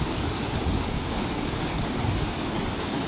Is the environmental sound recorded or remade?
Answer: remade